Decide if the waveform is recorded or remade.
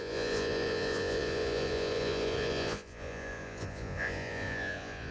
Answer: remade